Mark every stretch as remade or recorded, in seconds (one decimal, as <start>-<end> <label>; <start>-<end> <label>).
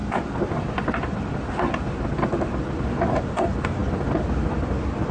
0.0-3.1 recorded; 3.1-3.8 remade; 3.8-5.1 recorded